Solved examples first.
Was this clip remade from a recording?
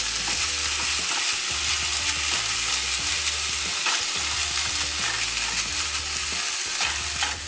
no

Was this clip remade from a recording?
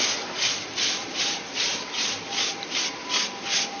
no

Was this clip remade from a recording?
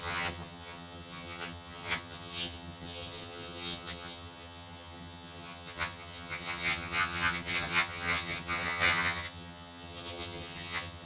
yes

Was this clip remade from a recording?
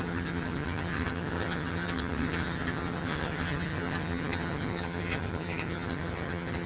yes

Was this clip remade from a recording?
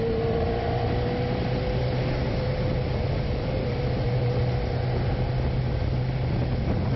no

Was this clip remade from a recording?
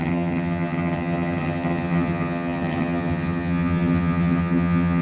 yes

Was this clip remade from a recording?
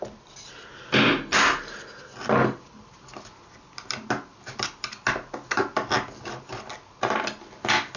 no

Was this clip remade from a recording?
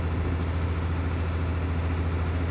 no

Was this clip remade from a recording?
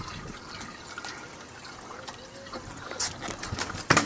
no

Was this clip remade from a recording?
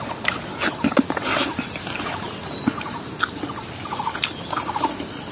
no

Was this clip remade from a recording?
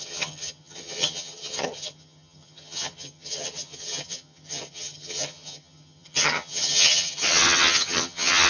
yes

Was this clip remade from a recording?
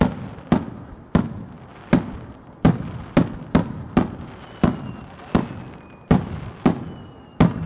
no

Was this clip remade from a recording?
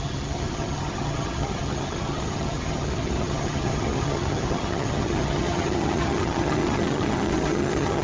yes